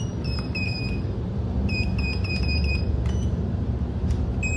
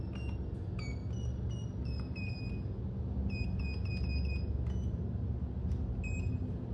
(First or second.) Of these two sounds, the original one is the second